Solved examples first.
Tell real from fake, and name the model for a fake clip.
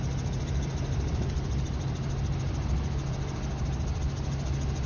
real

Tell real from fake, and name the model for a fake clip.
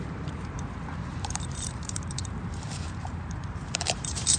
fake, vocoder, BigVGAN v2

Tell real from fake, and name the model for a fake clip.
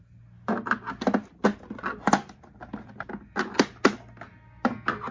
real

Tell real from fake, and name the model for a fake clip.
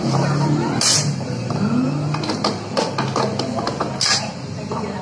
real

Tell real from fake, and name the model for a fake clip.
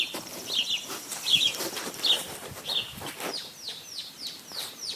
fake, vocoder, BigVGAN v2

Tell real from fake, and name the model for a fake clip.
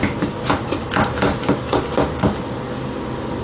real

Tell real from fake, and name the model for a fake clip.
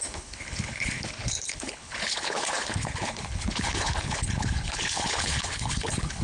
fake, codec, HILCodec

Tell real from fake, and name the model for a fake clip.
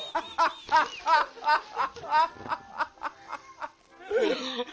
real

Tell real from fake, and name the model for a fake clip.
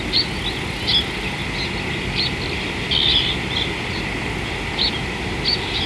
real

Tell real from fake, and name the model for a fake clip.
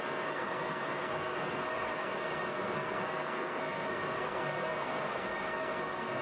fake, codec, SNAC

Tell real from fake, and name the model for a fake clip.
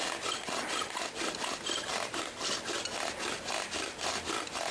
real